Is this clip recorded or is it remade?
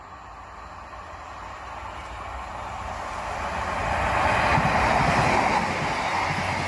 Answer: recorded